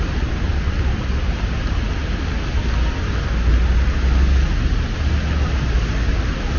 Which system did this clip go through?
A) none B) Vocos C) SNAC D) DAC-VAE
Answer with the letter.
A